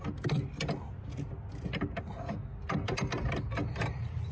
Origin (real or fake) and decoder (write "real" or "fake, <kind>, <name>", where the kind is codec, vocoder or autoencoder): real